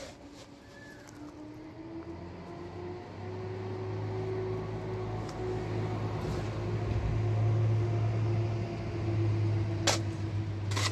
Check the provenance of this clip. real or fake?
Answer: real